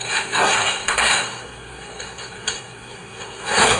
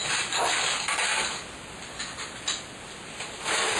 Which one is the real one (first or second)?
second